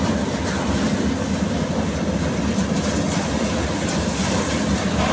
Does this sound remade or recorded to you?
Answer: recorded